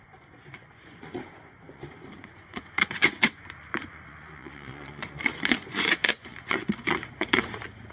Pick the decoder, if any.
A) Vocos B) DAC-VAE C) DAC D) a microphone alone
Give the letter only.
A